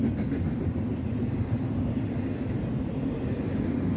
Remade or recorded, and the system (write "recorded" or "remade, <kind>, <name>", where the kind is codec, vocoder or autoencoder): recorded